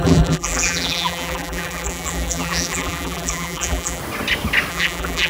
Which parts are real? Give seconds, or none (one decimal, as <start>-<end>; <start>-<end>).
4.0-4.7

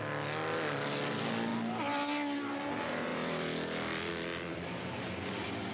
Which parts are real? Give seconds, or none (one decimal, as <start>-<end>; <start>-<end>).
0.0-3.1; 4.1-4.5